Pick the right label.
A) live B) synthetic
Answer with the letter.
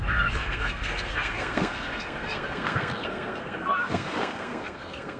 B